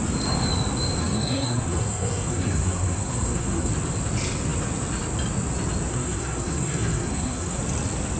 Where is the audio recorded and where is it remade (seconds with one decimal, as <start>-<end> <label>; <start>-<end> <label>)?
0.0-1.0 recorded; 1.0-3.7 remade; 3.7-5.9 recorded; 5.9-7.6 remade; 7.6-8.2 recorded